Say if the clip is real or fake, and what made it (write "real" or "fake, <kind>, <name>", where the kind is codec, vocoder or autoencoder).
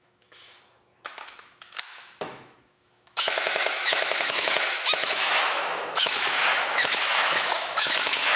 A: fake, autoencoder, DAC-VAE